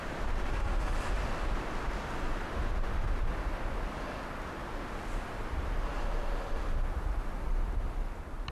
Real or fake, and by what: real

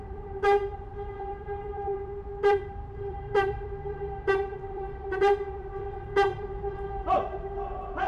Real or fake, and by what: fake, vocoder, BigVGAN v2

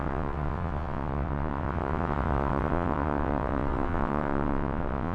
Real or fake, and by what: fake, vocoder, WaveNeXt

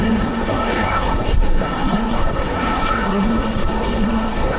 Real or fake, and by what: fake, codec, SNAC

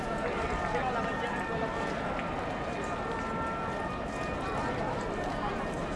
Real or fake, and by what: real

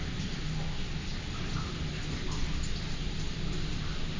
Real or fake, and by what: real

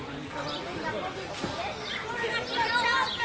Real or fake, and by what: real